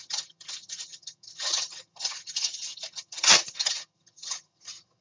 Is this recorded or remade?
remade